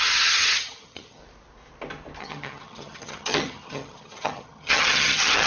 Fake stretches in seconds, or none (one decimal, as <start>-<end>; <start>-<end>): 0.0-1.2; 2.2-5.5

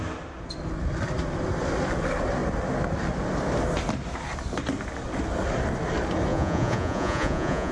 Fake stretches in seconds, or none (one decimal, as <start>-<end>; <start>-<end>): 6.3-7.7

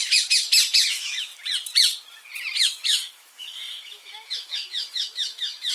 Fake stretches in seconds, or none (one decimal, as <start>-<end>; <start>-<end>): 0.9-1.3; 2.6-5.7

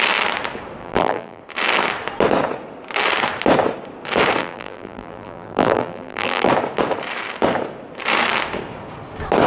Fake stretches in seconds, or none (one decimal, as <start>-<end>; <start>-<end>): 0.8-1.4; 4.4-6.5